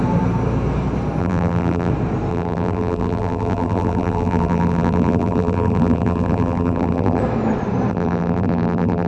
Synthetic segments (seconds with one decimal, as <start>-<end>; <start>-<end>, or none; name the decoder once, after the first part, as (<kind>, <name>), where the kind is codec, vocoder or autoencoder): 1.2-1.9 (vocoder, BigVGAN v2); 2.3-7.2; 7.9-9.1